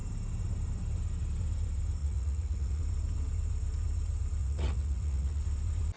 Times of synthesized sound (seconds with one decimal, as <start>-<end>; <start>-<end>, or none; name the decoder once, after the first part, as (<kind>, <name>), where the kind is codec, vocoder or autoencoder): 2.0-2.8 (vocoder, Vocos); 4.4-5.4